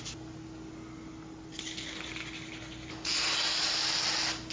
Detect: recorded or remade recorded